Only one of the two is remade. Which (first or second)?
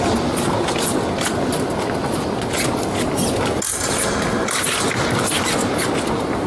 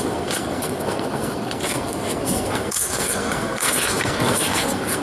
second